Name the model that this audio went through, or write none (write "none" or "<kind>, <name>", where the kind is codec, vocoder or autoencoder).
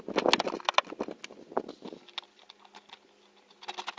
none